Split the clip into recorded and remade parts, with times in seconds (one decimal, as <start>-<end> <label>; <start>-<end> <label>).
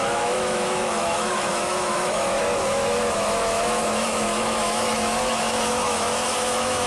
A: 0.0-6.9 remade